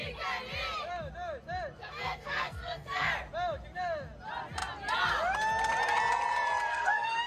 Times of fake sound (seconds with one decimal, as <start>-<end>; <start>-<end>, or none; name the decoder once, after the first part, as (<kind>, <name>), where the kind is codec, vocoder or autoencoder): 1.8-3.1 (codec, SNAC); 6.7-7.3